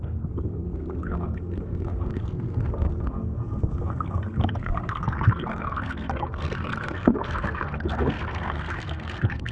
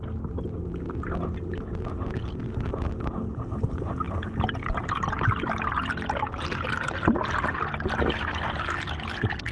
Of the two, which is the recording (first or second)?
second